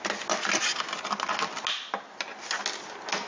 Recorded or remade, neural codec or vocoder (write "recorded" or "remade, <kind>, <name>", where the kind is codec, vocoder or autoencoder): recorded